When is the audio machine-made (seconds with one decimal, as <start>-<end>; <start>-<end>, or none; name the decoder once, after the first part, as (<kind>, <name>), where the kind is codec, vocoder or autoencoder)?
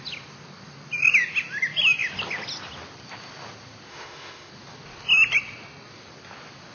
3.9-4.5 (autoencoder, DAC-VAE)